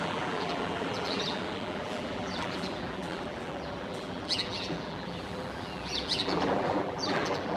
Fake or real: fake